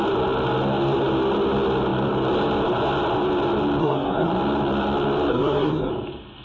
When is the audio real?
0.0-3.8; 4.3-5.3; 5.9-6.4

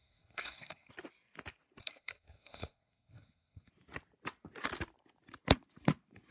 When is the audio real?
0.9-1.8; 3.7-6.3

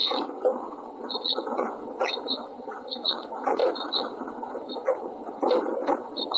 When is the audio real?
none